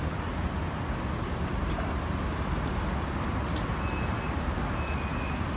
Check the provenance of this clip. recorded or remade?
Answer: recorded